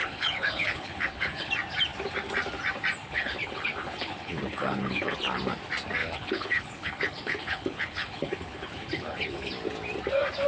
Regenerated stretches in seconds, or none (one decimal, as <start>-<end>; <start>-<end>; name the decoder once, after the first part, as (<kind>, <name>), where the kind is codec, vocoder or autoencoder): 0.0-1.5 (codec, HILCodec); 3.0-5.4; 6.0-9.5